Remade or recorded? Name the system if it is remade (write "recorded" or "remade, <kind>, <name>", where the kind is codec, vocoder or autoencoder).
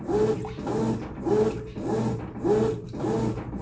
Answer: recorded